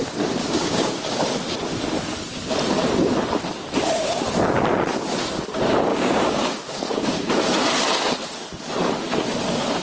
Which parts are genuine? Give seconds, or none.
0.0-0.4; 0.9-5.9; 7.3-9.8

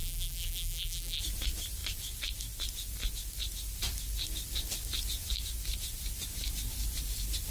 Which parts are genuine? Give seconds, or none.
1.2-7.5

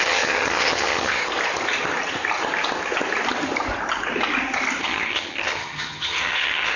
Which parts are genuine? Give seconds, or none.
1.2-4.8

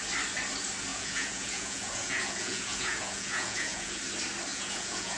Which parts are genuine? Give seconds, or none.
0.0-0.9; 4.0-4.5

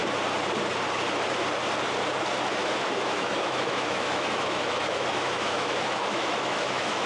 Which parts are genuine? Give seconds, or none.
0.0-2.6

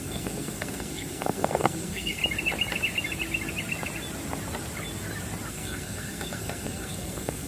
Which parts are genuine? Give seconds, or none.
2.2-5.5